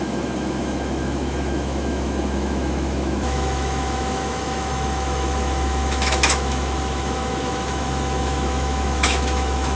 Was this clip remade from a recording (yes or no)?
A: yes